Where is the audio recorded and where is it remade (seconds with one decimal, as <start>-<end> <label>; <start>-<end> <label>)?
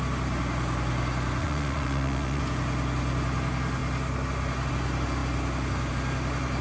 0.0-1.4 recorded; 1.4-2.4 remade; 2.4-6.6 recorded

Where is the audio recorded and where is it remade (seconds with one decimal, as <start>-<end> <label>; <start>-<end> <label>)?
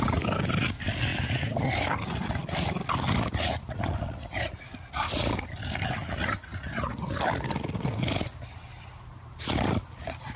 0.0-10.4 recorded